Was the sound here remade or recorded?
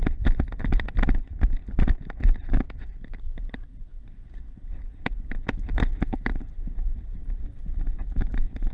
recorded